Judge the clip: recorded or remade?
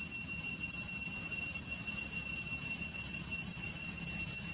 recorded